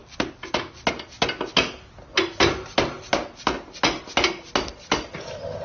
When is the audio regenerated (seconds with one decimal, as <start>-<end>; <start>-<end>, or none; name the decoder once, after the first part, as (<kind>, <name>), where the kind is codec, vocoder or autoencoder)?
none